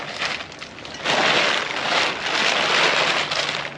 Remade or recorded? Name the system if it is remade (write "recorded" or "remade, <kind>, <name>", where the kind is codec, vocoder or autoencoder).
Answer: recorded